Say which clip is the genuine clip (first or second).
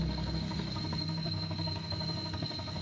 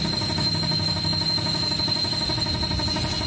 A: second